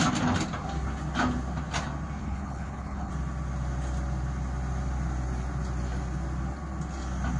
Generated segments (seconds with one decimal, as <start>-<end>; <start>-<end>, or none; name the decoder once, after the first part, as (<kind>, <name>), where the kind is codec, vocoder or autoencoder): 2.2-3.1 (codec, HILCodec)